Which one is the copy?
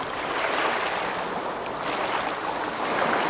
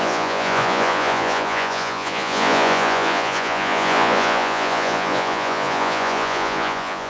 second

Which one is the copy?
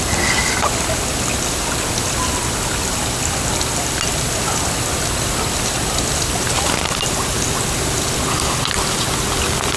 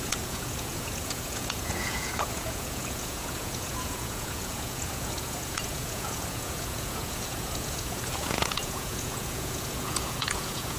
second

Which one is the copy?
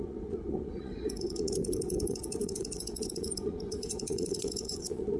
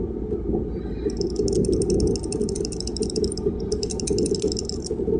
first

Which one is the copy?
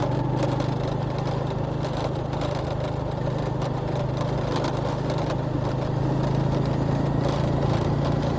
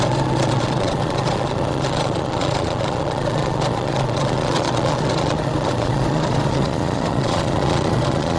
second